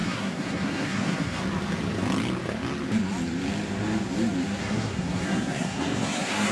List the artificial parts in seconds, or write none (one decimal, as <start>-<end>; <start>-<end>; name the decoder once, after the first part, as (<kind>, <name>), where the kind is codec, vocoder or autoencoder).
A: 0.0-1.4 (codec, SNAC); 4.6-6.5